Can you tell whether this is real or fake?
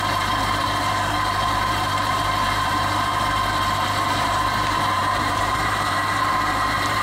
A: fake